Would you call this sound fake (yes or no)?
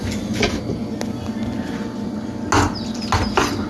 no